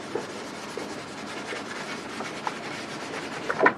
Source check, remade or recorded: recorded